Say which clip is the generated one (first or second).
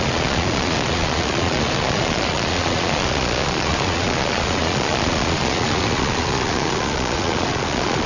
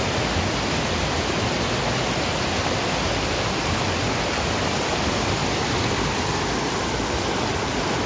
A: first